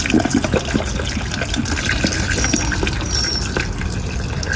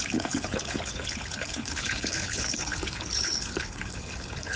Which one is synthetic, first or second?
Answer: second